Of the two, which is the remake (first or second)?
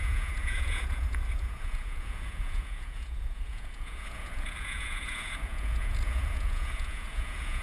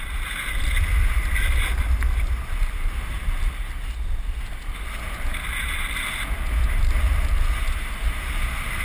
first